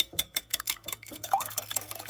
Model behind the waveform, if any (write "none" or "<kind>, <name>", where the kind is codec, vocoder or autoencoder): codec, SNAC